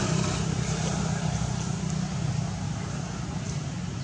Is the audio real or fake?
real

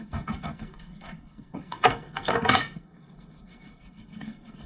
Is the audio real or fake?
fake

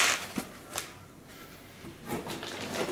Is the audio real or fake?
real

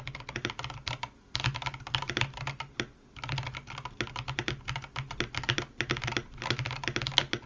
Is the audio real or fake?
real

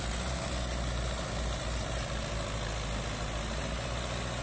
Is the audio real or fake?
real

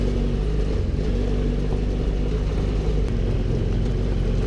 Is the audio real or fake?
real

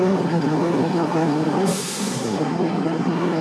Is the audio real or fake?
fake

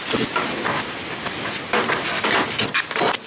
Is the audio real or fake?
real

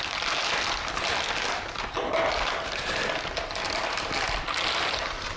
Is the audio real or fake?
real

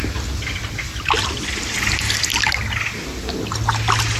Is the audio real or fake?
real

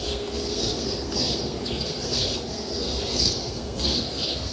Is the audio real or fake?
fake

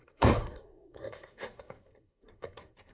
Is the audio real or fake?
fake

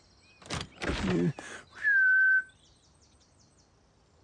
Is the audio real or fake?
real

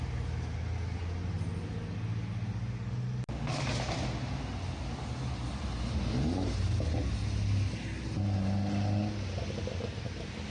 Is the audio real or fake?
real